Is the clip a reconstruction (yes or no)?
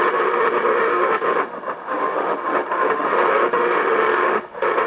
yes